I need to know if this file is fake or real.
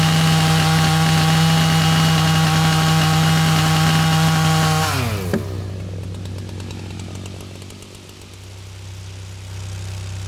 real